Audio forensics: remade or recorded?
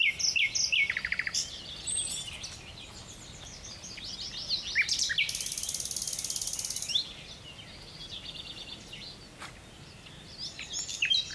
recorded